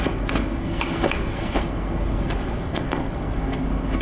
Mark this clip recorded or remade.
remade